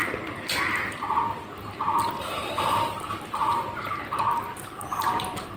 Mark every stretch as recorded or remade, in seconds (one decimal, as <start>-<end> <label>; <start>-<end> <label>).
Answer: 0.0-2.9 recorded; 2.9-5.6 remade